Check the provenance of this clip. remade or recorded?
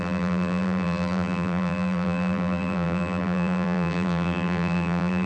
remade